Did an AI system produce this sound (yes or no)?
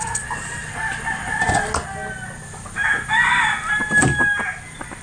no